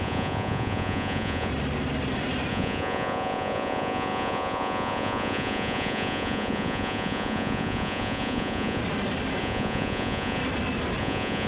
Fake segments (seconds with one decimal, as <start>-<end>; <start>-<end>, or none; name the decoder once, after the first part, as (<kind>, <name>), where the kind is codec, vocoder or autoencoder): 0.0-1.5 (vocoder, Vocos); 2.5-8.8; 9.4-10.4; 11.0-11.5